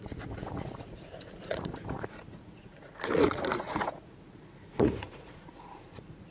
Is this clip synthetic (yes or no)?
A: yes